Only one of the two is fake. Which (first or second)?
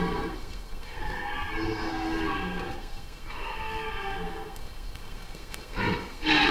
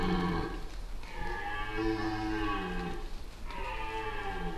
first